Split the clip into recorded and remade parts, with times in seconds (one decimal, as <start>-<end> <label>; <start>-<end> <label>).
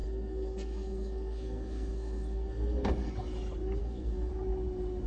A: 0.0-3.1 remade; 3.1-3.8 recorded; 3.8-4.3 remade; 4.3-5.1 recorded